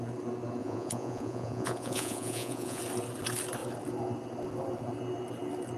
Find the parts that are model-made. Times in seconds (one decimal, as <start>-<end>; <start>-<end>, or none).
0.6-2.8